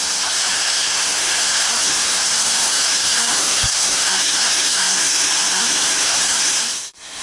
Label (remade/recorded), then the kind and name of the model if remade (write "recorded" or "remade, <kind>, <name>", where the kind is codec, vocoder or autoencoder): remade, codec, SNAC